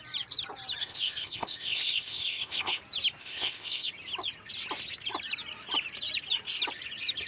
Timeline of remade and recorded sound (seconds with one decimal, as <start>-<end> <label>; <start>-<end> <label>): 0.0-0.8 recorded; 0.8-2.8 remade; 2.8-3.2 recorded; 3.2-3.9 remade; 3.9-7.3 recorded